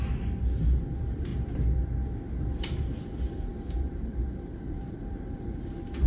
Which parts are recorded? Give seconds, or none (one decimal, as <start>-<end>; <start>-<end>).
1.3-2.6